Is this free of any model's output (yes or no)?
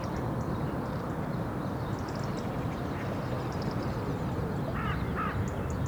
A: yes